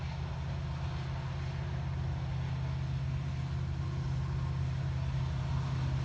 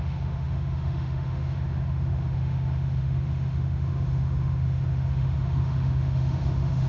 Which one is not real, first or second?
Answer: second